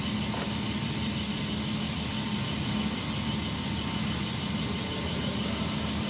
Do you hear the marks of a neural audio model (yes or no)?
no